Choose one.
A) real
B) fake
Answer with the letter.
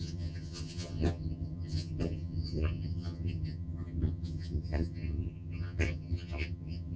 B